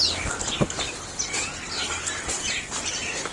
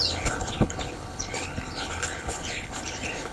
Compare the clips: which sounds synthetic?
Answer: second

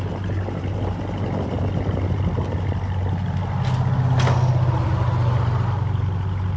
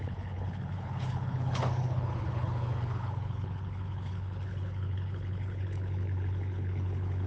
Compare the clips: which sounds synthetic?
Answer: second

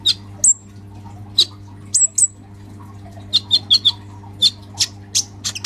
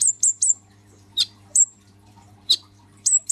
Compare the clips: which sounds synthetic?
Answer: second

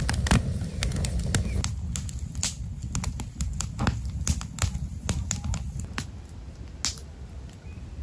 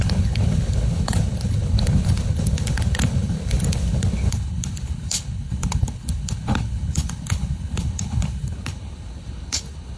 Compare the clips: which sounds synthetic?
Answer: second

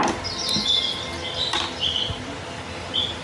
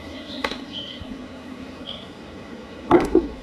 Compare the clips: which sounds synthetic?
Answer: second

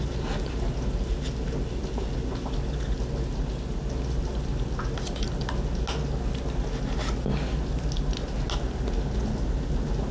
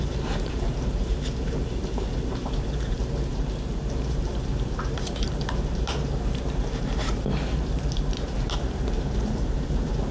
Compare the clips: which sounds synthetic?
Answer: second